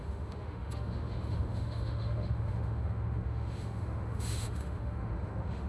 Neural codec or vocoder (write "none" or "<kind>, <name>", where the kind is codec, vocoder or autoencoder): autoencoder, DAC-VAE